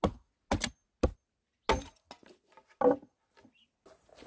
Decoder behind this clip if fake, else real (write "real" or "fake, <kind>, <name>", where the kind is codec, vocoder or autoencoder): real